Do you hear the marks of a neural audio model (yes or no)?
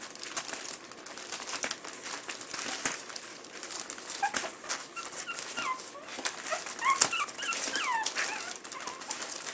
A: no